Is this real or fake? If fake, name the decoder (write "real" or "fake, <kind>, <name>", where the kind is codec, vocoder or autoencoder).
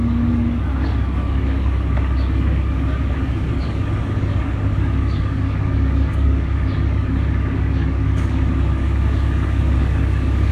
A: fake, codec, DAC